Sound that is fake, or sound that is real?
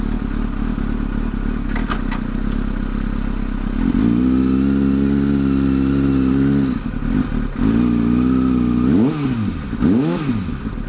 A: real